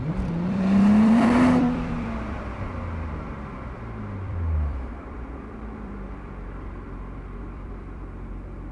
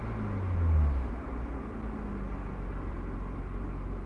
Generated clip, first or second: first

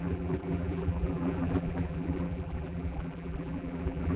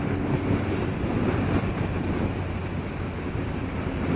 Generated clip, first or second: first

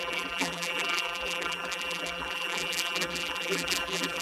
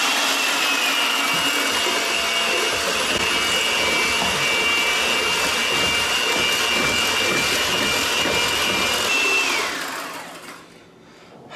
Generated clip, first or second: first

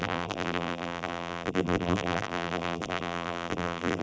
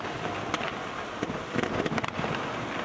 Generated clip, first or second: first